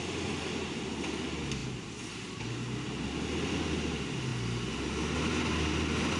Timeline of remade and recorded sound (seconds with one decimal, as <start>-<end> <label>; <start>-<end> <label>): 0.0-1.6 recorded; 1.6-2.4 remade; 2.4-6.2 recorded